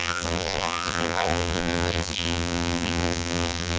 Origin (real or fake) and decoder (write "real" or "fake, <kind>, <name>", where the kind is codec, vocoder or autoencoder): fake, vocoder, BigVGAN v2